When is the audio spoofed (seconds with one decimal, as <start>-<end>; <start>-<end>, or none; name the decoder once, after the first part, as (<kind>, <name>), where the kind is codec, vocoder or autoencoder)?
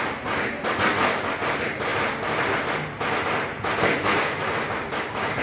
none